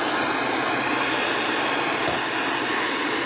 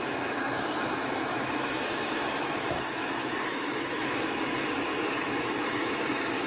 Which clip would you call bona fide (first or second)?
first